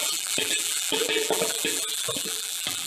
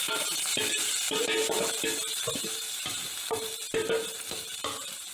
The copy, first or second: first